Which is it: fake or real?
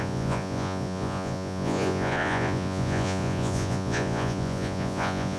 fake